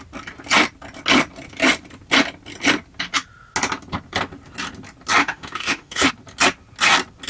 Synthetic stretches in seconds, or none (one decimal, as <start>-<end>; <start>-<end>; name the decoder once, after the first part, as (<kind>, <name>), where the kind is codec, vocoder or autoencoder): 5.2-6.1 (autoencoder, DAC-VAE)